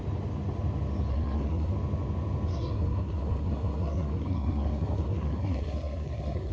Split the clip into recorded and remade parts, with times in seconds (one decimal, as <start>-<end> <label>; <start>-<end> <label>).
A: 0.0-1.1 recorded; 1.1-1.7 remade; 1.7-2.5 recorded; 2.5-6.5 remade